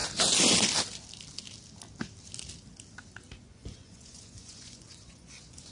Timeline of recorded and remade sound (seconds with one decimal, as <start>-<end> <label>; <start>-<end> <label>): 0.0-3.4 recorded; 3.4-5.7 remade